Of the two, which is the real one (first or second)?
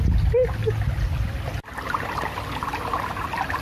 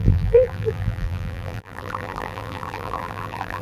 first